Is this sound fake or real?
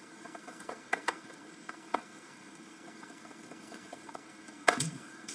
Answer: fake